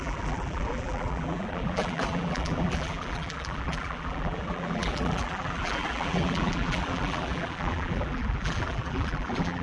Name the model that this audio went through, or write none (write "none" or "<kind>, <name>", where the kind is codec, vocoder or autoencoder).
vocoder, BigVGAN v2